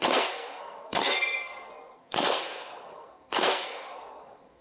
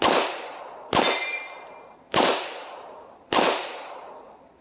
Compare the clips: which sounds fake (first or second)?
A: first